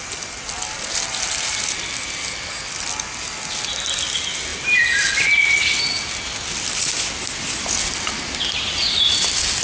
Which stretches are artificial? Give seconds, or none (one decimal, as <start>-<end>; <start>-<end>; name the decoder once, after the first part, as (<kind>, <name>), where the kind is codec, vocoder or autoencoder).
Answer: none